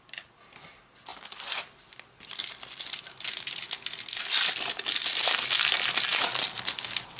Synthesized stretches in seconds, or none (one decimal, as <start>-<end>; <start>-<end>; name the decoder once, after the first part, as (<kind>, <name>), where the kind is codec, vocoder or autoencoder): none

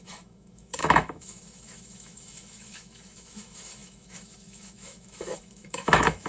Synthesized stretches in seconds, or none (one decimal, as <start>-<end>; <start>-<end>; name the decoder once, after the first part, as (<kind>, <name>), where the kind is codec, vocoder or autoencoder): 0.0-6.3 (autoencoder, DAC-VAE)

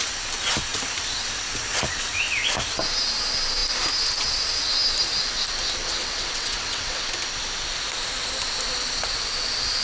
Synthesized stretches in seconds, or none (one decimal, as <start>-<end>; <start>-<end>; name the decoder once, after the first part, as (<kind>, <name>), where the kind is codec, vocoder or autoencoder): 5.8-7.1 (vocoder, WaveNeXt)

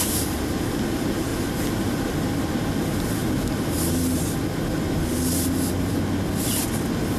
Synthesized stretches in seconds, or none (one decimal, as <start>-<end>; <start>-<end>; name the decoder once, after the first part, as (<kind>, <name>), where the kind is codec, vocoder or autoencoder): none

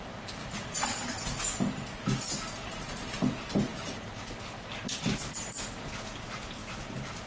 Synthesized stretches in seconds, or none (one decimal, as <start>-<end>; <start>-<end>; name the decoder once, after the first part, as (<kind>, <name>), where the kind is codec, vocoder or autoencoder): 3.7-4.4 (vocoder, BigVGAN v2)

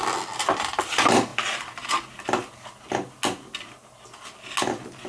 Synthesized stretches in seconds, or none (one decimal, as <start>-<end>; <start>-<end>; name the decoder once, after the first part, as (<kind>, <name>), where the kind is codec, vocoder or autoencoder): none

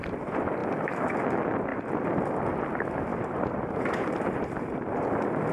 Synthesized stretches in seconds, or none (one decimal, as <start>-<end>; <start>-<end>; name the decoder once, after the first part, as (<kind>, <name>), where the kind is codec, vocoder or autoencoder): 3.1-4.9 (vocoder, BigVGAN v2)

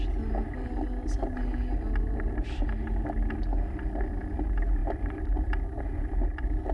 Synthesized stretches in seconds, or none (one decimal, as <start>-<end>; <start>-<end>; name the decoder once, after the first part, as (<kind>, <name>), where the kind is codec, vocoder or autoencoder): none